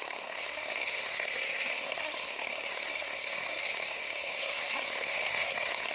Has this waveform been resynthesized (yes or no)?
yes